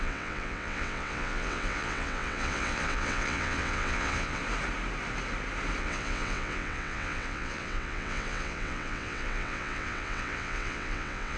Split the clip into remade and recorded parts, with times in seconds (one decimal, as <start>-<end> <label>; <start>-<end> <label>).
0.0-4.4 remade; 4.4-5.8 recorded; 5.8-11.4 remade